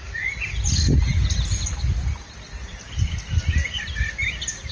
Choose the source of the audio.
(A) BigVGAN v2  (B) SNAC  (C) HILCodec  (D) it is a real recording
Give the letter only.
D